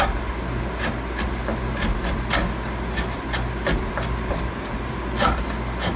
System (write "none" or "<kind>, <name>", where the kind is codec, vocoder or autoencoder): none